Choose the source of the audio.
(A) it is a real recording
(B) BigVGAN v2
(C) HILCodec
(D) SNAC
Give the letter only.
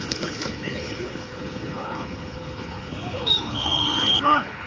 C